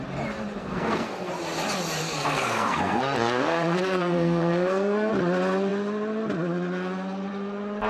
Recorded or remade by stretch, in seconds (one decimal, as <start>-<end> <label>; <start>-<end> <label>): 0.0-0.6 recorded; 0.6-1.3 remade; 1.3-2.0 recorded; 2.0-5.1 remade; 5.1-7.9 recorded